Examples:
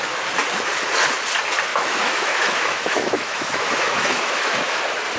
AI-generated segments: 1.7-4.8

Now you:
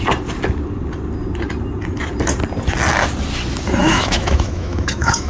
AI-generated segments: 3.8-5.3

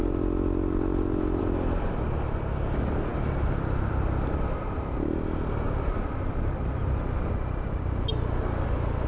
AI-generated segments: none

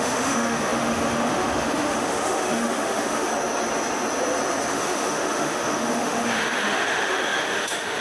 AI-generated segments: 0.0-3.3; 4.7-8.0

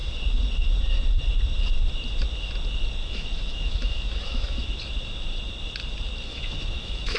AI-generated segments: 3.0-4.8; 6.3-7.2

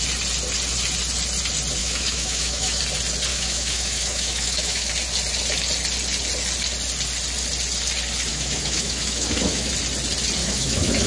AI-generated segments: 1.8-2.8; 3.3-4.9; 8.3-9.7; 10.4-11.1

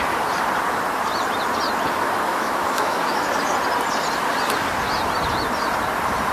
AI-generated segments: 2.3-3.3

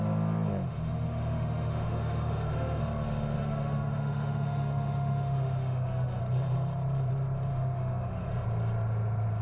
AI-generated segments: 0.7-2.8; 3.4-6.2; 7.5-8.3